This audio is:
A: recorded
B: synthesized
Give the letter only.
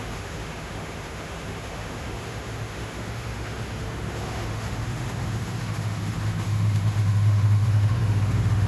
B